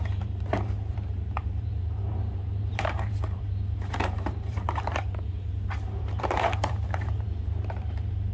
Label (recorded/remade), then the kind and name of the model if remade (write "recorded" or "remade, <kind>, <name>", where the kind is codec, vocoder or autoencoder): remade, vocoder, BigVGAN v2